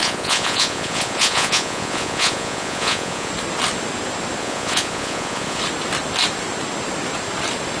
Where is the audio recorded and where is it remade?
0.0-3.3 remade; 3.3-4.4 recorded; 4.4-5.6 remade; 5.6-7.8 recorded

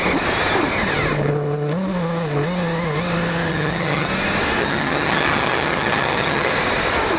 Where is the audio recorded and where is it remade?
0.0-3.5 recorded; 3.5-4.1 remade; 4.1-4.6 recorded; 4.6-6.5 remade; 6.5-7.2 recorded

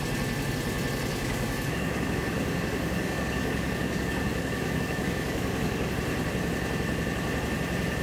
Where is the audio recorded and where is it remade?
0.0-1.1 recorded; 1.1-5.9 remade; 5.9-8.0 recorded

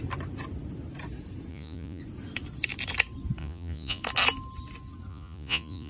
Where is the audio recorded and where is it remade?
0.0-1.5 recorded; 1.5-2.0 remade; 2.0-3.4 recorded; 3.4-4.0 remade; 4.0-5.1 recorded; 5.1-5.9 remade

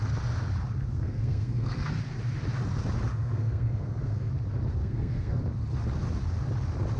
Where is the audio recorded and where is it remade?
0.0-0.9 recorded; 0.9-1.9 remade; 1.9-3.1 recorded; 3.1-4.3 remade; 4.3-4.7 recorded; 4.7-5.4 remade; 5.4-7.0 recorded

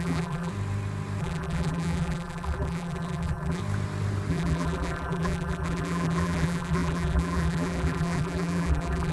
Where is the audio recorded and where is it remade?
0.0-0.5 remade; 0.5-1.2 recorded; 1.2-3.6 remade; 3.6-4.3 recorded; 4.3-9.1 remade

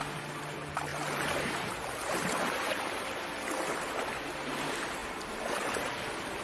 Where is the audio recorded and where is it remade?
0.0-0.9 recorded; 0.9-3.2 remade; 3.2-5.0 recorded; 5.0-5.9 remade; 5.9-6.4 recorded